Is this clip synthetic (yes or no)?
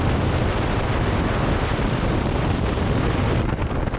no